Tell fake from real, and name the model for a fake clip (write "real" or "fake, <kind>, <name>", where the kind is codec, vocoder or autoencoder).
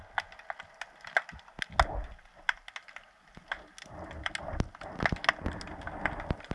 real